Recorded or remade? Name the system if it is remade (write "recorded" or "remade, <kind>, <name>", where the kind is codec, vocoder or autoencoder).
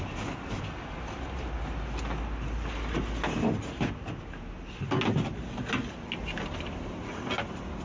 recorded